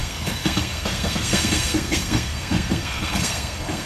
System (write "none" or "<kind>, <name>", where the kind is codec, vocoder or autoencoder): codec, SNAC